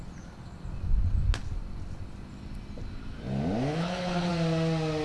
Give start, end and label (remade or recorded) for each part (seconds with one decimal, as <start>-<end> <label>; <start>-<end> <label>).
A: 0.0-3.7 recorded; 3.7-4.3 remade; 4.3-5.0 recorded